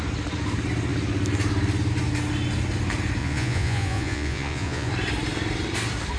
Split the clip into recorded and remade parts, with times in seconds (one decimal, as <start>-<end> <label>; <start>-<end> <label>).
0.0-3.2 recorded; 3.2-4.9 remade; 4.9-6.2 recorded